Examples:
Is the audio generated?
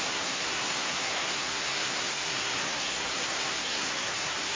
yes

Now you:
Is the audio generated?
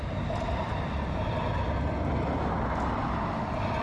no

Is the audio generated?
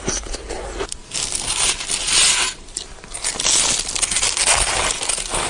no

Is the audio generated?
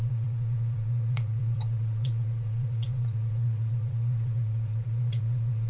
yes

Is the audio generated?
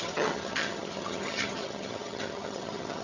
yes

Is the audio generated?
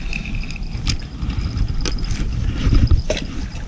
no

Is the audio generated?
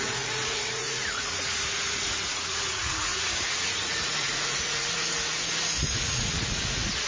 yes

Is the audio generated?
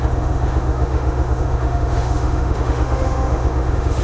yes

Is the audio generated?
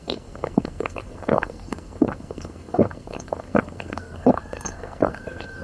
yes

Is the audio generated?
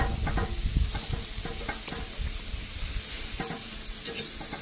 no